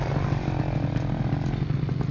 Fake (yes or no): no